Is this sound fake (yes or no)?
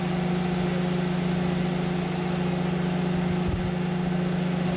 no